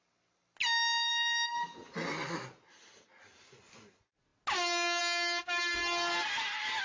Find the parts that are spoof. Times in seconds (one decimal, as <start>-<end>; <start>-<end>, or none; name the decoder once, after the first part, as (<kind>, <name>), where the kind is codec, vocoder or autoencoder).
none